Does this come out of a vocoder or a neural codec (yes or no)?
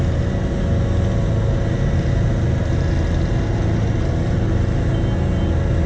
no